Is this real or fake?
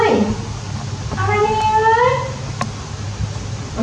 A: real